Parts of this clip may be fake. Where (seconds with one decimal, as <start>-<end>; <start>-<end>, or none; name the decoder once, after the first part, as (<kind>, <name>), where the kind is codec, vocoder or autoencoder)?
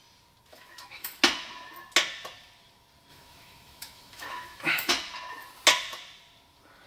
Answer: 0.5-1.2 (autoencoder, DAC-VAE); 3.1-4.9